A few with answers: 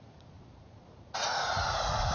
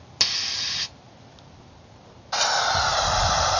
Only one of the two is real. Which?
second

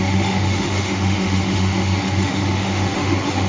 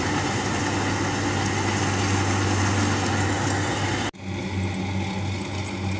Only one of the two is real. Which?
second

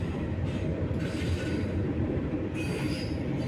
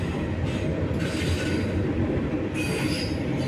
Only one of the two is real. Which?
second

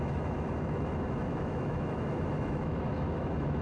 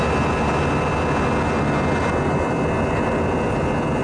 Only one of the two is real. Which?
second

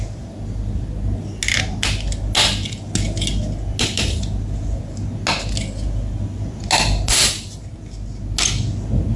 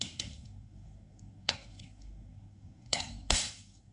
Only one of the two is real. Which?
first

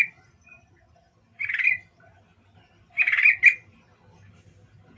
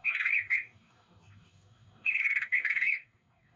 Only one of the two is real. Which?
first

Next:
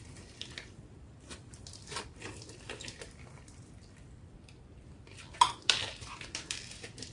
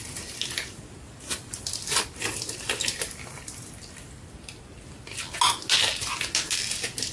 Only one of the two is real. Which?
second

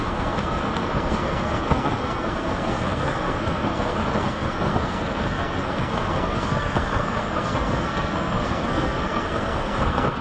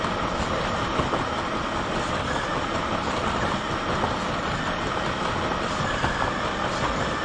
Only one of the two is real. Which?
second